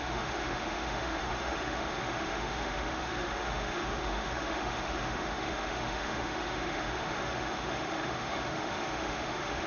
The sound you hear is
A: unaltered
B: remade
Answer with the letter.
B